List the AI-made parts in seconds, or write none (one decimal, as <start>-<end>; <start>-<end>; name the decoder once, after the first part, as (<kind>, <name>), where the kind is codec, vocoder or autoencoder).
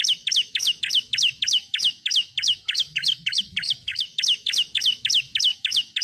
0.0-6.0 (autoencoder, DAC-VAE)